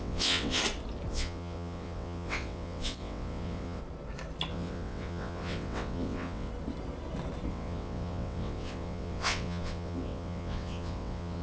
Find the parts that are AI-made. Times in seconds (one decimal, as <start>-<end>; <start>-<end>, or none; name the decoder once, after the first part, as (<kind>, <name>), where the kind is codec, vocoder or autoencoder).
0.0-0.6 (vocoder, WaveNeXt); 1.1-3.8; 4.5-6.5; 7.5-11.4